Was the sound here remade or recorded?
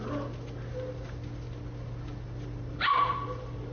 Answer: recorded